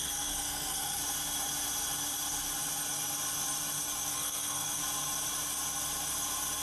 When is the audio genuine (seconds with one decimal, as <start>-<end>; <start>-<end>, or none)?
1.0-4.1; 4.8-6.6